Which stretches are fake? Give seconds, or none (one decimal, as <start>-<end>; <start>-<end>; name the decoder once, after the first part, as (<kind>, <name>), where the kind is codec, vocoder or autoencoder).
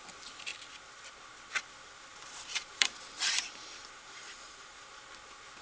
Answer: 2.1-2.9 (vocoder, BigVGAN v2); 3.8-4.9